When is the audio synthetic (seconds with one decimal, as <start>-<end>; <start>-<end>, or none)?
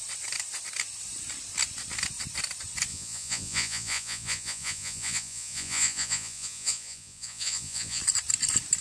2.9-8.0